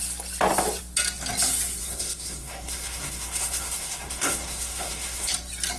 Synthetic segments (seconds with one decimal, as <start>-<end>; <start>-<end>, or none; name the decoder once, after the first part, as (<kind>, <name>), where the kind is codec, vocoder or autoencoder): 1.8-5.3 (codec, SNAC)